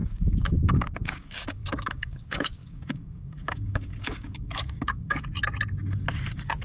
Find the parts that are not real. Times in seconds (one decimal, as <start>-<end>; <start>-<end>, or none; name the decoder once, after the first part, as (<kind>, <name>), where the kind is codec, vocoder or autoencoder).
0.0-5.3 (codec, DAC); 6.1-6.6